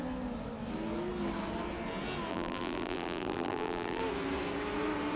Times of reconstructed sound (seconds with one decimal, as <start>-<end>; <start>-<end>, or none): 2.3-4.0